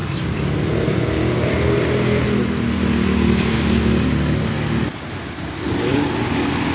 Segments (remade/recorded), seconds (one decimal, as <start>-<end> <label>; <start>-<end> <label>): 0.0-6.7 recorded